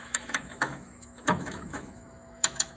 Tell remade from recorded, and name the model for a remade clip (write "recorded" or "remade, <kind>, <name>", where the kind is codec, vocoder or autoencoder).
remade, autoencoder, DAC-VAE